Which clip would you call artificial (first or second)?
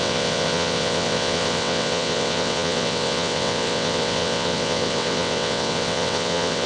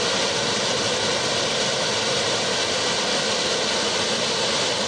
first